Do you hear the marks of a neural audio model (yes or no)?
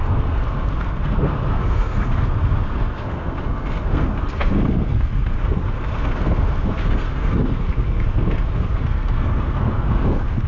yes